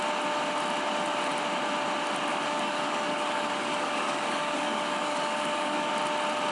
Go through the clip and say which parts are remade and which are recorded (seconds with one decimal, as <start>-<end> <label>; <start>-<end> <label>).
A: 0.0-2.3 recorded; 2.3-5.9 remade; 5.9-6.5 recorded